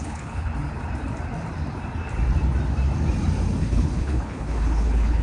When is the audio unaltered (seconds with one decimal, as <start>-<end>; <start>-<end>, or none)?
0.5-3.6